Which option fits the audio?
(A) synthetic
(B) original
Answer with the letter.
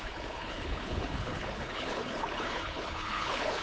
A